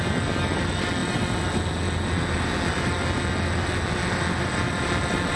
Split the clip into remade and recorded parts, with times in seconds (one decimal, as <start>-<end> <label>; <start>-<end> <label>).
0.0-5.4 recorded